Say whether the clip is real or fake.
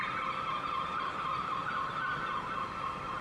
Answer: real